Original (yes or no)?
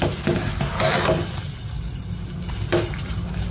yes